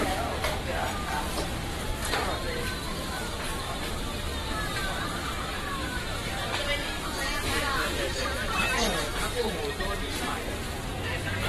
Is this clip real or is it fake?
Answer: fake